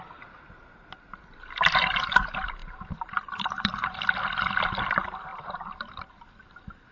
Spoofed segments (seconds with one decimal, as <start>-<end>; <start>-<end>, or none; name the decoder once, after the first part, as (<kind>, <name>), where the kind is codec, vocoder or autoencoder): 2.6-4.0 (vocoder, BigVGAN v2); 5.3-6.9